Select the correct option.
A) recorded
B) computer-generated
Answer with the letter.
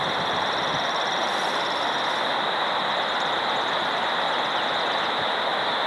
A